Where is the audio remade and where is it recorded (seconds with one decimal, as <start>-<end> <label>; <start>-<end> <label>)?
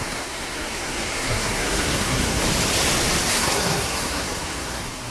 0.0-2.4 remade; 2.4-3.3 recorded; 3.3-5.1 remade